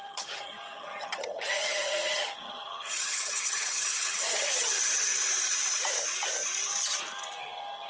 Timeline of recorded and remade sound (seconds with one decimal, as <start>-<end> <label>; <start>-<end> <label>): 0.0-5.1 remade; 5.1-7.9 recorded